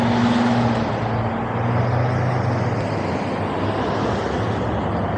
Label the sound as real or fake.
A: real